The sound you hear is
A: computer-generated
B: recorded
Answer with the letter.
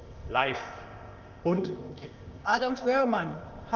A